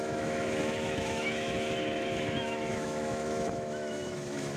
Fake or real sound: fake